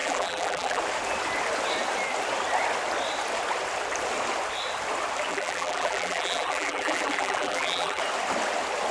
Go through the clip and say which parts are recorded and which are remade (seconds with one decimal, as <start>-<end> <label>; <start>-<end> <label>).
0.0-0.8 remade; 0.8-5.3 recorded; 5.3-8.0 remade; 8.0-8.9 recorded